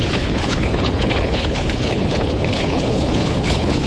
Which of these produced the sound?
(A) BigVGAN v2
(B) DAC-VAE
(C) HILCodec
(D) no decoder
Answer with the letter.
C